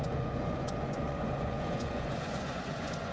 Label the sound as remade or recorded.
remade